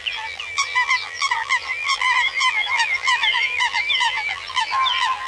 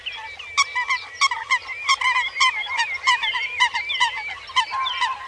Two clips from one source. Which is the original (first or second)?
second